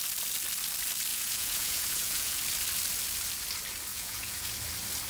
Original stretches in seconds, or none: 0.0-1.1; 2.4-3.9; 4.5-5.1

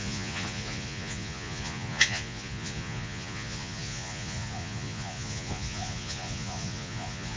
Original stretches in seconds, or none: none

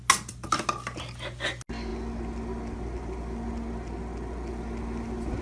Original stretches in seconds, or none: 0.0-5.4

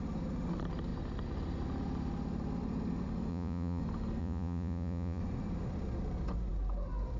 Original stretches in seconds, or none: 0.0-3.3; 3.8-4.2; 5.2-7.2

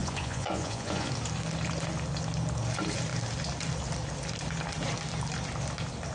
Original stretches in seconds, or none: 1.1-6.1